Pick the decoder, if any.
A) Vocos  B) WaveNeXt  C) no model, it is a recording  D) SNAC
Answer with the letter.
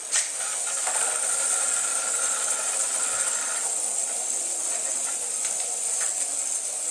C